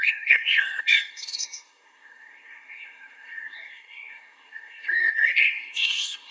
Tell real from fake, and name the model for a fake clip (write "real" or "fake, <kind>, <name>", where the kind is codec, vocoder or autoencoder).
fake, codec, SNAC